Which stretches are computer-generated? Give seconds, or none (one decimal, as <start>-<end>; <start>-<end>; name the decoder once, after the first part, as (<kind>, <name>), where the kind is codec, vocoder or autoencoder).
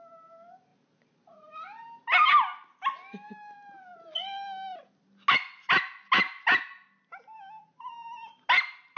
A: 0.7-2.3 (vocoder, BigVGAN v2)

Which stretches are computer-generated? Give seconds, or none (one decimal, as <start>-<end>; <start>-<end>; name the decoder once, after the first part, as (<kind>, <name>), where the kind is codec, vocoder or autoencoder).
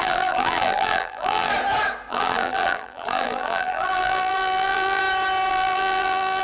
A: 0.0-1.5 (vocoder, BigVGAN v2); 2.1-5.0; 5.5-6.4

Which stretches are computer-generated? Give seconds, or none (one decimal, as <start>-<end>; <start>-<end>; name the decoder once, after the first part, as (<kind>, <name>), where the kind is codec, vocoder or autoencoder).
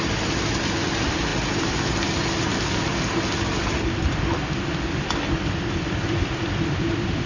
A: 0.0-1.3 (vocoder, BigVGAN v2); 5.7-7.3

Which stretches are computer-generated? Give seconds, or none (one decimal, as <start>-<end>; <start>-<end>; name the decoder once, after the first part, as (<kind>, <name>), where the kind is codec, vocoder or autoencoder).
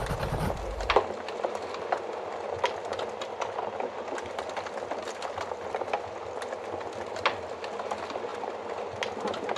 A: none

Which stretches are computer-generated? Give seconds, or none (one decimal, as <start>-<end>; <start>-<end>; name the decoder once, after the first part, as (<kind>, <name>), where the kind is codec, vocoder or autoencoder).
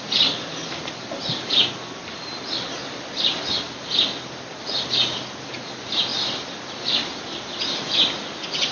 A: none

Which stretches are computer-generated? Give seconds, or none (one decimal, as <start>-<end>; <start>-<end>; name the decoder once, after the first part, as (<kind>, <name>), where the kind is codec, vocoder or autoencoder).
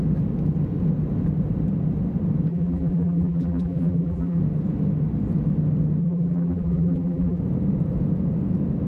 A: 2.5-4.4 (vocoder, BigVGAN v2); 6.0-7.4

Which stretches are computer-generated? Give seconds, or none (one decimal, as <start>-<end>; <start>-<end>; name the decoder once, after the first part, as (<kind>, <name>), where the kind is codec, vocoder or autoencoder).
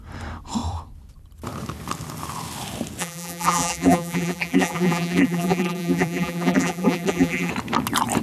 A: 3.0-7.5 (vocoder, BigVGAN v2)